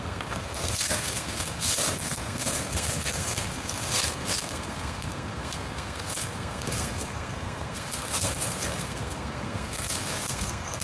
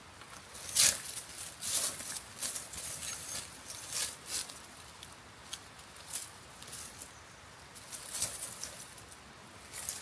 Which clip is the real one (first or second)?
second